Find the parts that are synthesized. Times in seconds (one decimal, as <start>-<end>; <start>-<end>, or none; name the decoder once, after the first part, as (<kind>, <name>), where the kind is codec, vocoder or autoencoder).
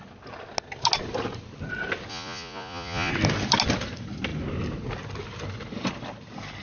2.1-3.1 (vocoder, Vocos)